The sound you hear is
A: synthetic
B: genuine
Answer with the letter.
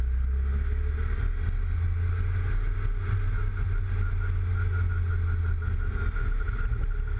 B